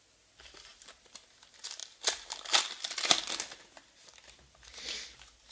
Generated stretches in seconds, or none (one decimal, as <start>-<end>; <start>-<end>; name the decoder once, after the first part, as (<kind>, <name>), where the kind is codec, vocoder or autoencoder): 0.7-1.3 (vocoder, BigVGAN v2); 1.8-3.3